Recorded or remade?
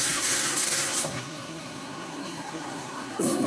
remade